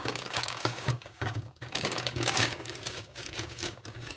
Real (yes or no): no